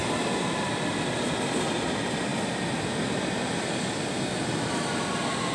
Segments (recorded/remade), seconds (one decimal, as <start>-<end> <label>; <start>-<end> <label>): 0.0-0.9 remade; 0.9-5.5 recorded